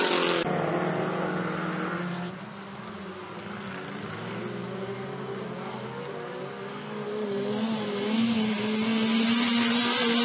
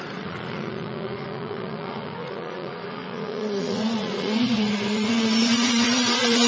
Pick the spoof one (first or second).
second